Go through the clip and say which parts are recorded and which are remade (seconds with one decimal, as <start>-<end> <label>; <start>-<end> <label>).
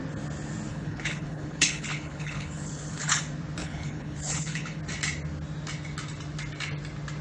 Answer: 0.0-0.7 recorded; 0.7-3.2 remade; 3.2-3.6 recorded; 3.6-4.8 remade; 4.8-7.2 recorded